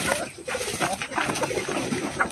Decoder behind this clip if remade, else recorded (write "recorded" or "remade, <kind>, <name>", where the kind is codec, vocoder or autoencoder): recorded